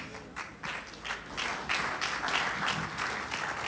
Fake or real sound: real